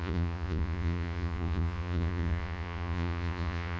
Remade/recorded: remade